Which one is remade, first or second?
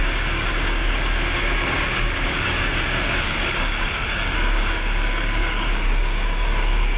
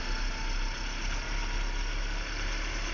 first